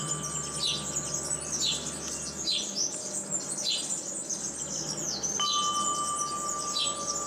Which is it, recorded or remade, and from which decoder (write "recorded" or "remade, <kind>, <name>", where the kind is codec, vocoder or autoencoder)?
recorded